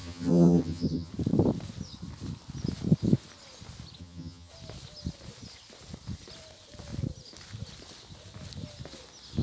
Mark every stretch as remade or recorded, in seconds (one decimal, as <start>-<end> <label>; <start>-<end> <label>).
0.0-1.1 remade; 1.1-4.0 recorded; 4.0-4.5 remade; 4.5-9.4 recorded